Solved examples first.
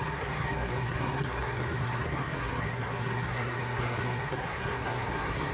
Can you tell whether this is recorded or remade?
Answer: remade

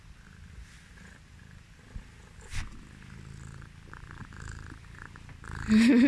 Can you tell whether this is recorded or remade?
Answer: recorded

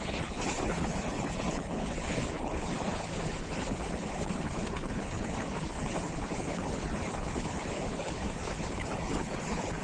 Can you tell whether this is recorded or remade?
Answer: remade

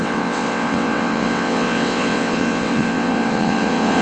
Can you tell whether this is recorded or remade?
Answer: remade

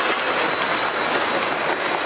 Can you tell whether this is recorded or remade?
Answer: recorded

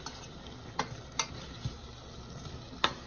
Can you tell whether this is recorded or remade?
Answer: recorded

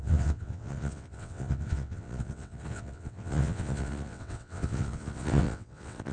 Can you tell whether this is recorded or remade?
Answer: remade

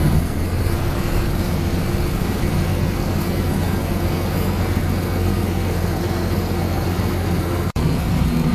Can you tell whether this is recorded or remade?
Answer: remade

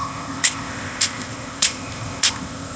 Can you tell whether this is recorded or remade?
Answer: remade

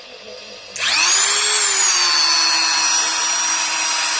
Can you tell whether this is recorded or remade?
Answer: recorded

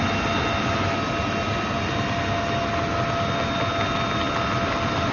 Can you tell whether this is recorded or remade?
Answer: recorded